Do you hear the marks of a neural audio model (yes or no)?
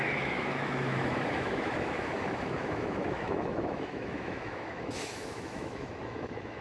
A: yes